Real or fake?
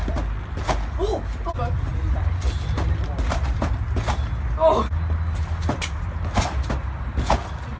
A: real